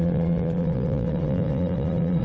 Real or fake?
fake